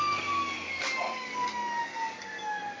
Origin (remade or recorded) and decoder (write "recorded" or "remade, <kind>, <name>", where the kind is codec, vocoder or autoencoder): remade, codec, DAC